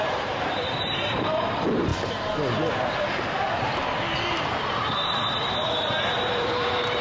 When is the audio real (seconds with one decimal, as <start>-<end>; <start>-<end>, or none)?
1.9-6.1